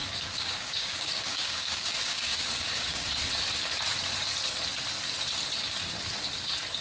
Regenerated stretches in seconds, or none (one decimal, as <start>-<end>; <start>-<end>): 0.0-3.2